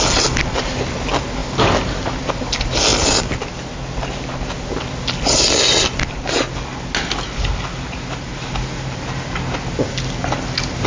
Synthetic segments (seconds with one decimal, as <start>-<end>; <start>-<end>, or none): none